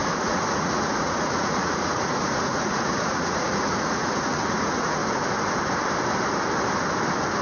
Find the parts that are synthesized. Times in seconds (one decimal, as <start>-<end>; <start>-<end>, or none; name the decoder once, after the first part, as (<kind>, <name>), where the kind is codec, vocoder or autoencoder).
0.0-5.0 (vocoder, Vocos)